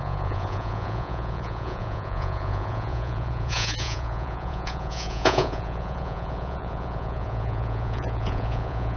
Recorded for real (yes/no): no